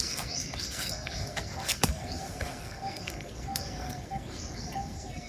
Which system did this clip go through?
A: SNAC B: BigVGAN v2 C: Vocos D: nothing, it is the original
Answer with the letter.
A